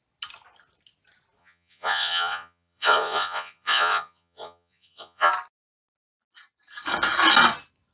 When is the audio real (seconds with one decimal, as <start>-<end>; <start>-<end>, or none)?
0.0-1.4; 5.3-7.9